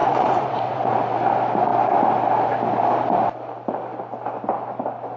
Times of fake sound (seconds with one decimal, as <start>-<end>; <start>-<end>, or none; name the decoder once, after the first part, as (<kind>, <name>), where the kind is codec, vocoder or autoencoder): 0.0-0.9 (vocoder, WaveNeXt)